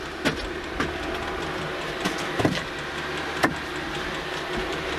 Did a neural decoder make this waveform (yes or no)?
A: no